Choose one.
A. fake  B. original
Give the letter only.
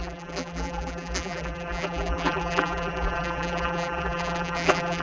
A